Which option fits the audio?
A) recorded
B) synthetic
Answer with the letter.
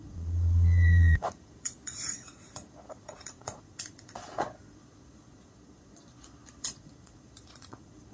B